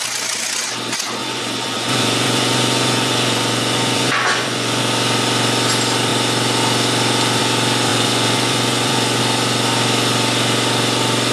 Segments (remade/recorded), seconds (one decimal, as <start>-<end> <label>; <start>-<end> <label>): 0.0-1.2 recorded; 1.2-4.8 remade; 4.8-7.9 recorded; 7.9-9.2 remade; 9.2-11.3 recorded

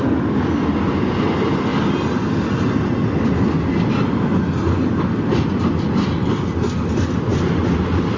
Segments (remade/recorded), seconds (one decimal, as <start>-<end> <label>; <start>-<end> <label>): 0.0-8.2 recorded

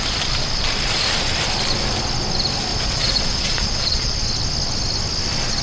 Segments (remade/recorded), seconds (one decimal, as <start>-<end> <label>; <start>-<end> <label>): 0.0-2.7 recorded; 2.7-4.1 remade; 4.1-5.6 recorded

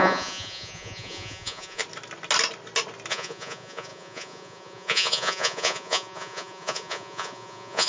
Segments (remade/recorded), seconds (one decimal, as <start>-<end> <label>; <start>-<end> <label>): 0.0-1.8 remade; 1.8-3.1 recorded; 3.1-7.9 remade

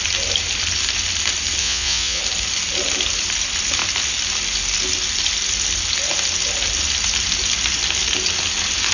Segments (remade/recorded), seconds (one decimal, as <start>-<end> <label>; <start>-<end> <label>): 0.0-1.6 recorded; 1.6-2.2 remade; 2.2-8.9 recorded

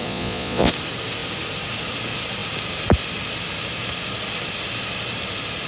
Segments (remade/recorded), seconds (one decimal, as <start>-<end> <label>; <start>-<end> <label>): 0.0-0.7 remade; 0.7-5.7 recorded

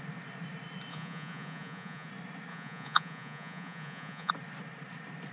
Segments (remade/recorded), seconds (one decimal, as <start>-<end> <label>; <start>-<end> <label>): 0.0-0.9 recorded; 0.9-2.1 remade; 2.1-2.5 recorded; 2.5-4.3 remade; 4.3-5.3 recorded

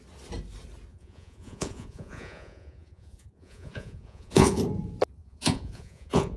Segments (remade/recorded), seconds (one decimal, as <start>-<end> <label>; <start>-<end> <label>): 0.0-0.9 recorded; 0.9-4.6 remade; 4.6-5.2 recorded; 5.2-6.4 remade